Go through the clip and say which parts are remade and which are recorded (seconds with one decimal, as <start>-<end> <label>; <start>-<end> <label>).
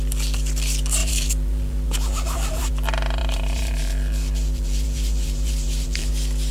0.0-1.0 recorded; 1.0-2.7 remade; 2.7-3.2 recorded; 3.2-6.1 remade; 6.1-6.5 recorded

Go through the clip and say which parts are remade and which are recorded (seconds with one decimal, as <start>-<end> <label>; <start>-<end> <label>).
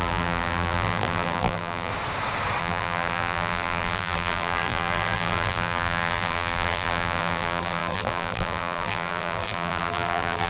0.0-1.9 remade; 1.9-2.6 recorded; 2.6-10.5 remade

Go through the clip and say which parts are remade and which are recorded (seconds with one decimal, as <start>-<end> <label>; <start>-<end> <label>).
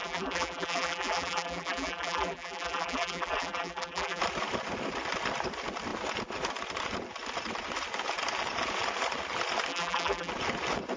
0.0-4.2 remade; 4.2-9.7 recorded; 9.7-10.3 remade; 10.3-11.0 recorded